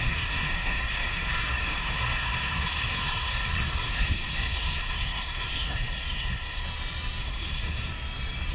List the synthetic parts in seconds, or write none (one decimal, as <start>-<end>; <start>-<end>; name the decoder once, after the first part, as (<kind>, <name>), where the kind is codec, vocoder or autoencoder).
0.0-6.6 (codec, SNAC); 7.2-7.9

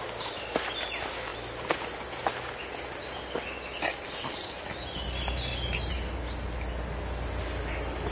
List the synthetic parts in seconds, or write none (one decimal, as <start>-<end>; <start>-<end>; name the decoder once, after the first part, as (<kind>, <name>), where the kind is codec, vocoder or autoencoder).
none

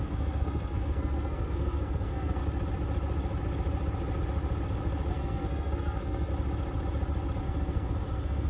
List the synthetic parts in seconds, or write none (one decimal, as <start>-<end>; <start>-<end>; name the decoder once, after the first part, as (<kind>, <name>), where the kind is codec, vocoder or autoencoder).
0.0-2.4 (codec, SNAC); 5.1-6.3; 7.4-8.5